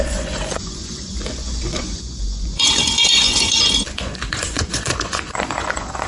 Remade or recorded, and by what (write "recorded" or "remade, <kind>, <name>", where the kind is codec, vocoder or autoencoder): remade, vocoder, Vocos